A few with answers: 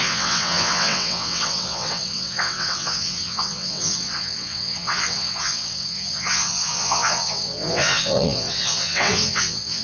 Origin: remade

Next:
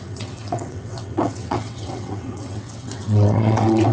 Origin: remade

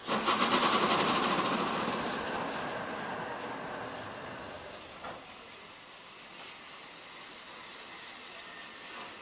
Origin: recorded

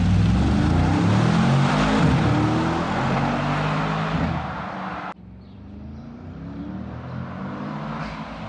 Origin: recorded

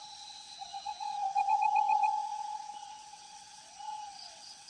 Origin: remade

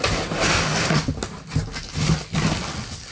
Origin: recorded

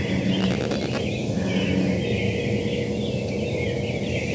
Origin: recorded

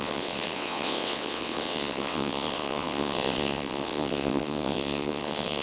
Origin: remade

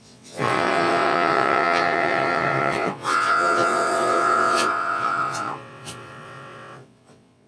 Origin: remade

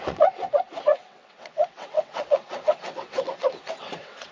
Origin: remade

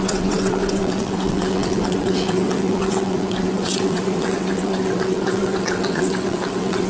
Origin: remade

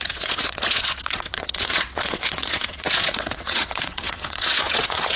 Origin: remade